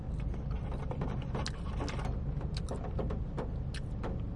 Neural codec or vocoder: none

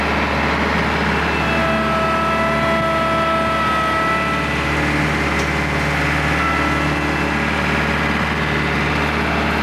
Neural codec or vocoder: none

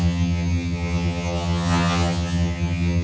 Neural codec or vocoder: vocoder, HiFi-GAN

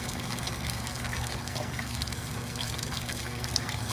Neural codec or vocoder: codec, SNAC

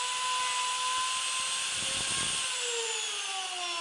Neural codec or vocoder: none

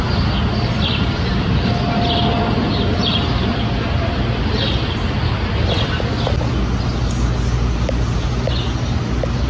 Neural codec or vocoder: none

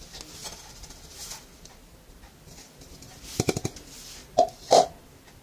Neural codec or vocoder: none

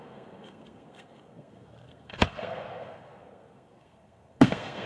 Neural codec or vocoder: codec, SNAC